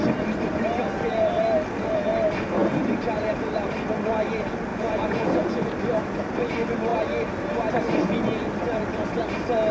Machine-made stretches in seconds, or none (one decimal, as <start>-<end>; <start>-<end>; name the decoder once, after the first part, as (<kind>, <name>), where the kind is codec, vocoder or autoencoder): 4.7-5.6 (vocoder, Vocos)